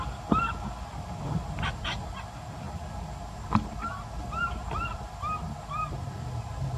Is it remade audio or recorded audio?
recorded